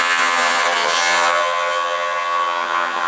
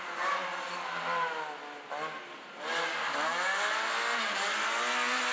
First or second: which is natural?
second